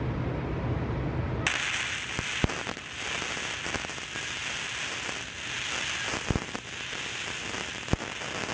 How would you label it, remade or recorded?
recorded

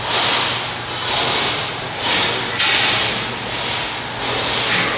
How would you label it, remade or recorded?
recorded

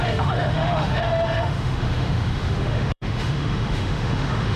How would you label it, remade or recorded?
remade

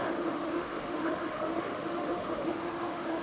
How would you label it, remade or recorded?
remade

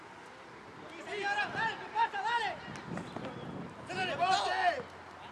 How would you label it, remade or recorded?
recorded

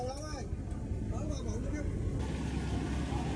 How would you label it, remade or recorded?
recorded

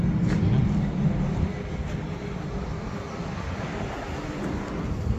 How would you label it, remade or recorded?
recorded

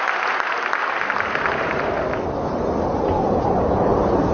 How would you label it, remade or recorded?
recorded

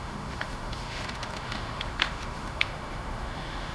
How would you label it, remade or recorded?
remade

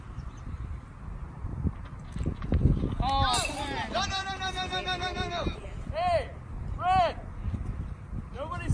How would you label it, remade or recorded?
recorded